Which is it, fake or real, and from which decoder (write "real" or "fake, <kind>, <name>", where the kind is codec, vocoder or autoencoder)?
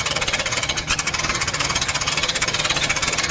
fake, vocoder, HiFi-GAN